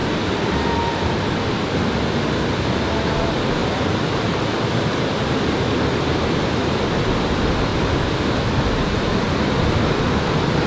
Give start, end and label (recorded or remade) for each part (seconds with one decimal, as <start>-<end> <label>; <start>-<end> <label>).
0.0-0.6 remade; 0.6-7.7 recorded; 7.7-9.3 remade; 9.3-10.7 recorded